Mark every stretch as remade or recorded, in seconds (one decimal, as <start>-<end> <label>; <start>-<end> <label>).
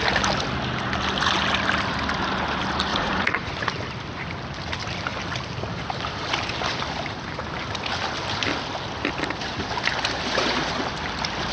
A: 0.0-2.9 recorded; 2.9-3.5 remade; 3.5-11.5 recorded